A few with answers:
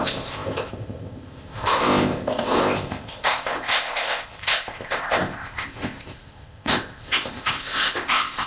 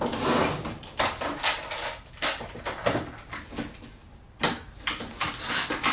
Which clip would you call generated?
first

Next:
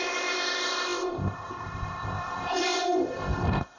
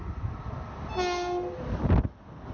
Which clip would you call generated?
first